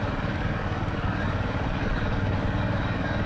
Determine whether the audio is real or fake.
fake